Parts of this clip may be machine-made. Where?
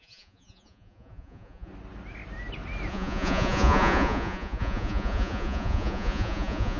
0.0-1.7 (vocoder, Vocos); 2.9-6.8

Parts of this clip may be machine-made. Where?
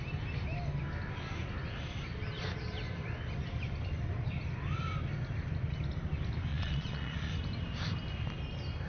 6.5-7.3 (vocoder, Vocos)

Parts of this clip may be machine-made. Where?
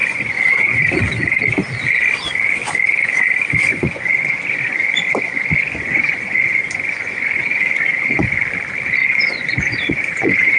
0.0-0.8 (vocoder, Vocos); 3.6-8.4; 9.0-10.6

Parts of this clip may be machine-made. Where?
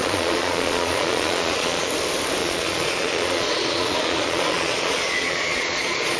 0.0-1.9 (vocoder, Vocos); 2.4-6.2